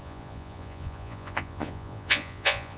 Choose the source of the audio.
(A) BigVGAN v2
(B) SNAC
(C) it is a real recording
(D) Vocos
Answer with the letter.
D